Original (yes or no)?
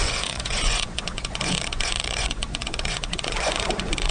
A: no